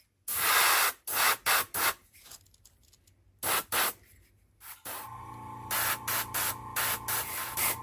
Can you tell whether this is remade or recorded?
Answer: recorded